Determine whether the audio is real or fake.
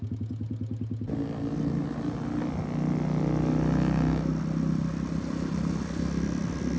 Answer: real